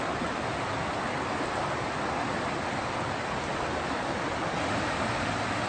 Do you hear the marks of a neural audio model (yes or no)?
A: no